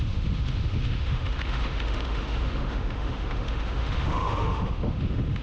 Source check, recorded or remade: remade